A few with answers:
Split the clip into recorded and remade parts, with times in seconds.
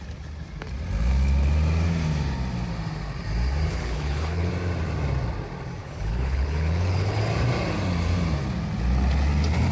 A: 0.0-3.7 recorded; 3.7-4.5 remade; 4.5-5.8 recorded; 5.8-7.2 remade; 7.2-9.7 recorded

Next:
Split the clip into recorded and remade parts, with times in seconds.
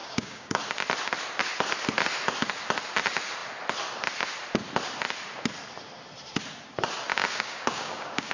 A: 0.0-0.6 remade; 0.6-7.1 recorded; 7.1-8.3 remade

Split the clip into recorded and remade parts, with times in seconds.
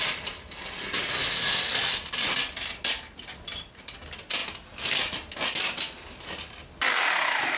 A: 0.0-7.6 recorded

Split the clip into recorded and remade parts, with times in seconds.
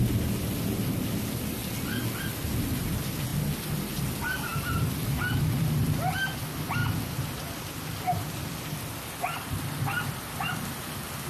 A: 0.0-6.8 recorded; 6.8-10.4 remade; 10.4-11.3 recorded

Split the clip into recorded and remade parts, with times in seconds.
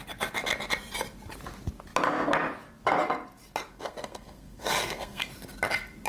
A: 0.0-3.7 recorded; 3.7-5.2 remade; 5.2-6.1 recorded